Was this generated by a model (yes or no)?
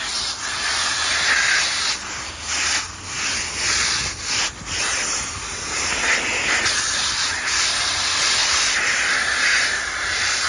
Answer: no